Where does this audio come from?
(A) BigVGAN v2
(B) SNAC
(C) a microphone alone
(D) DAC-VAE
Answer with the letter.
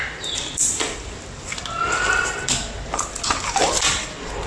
C